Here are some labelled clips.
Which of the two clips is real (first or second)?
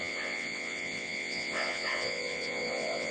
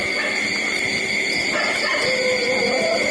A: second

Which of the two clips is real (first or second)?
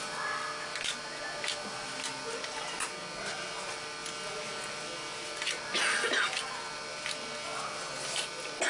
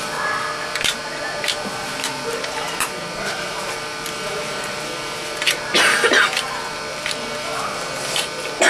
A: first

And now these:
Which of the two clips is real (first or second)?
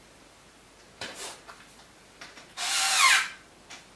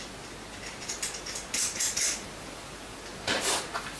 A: second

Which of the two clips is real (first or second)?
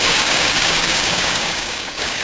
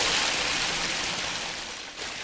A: second